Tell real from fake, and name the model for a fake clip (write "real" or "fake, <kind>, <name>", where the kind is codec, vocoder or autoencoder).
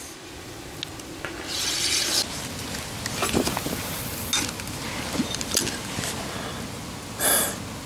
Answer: real